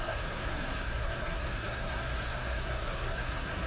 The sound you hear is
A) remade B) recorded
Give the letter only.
A